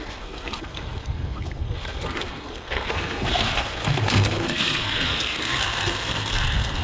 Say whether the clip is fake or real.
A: fake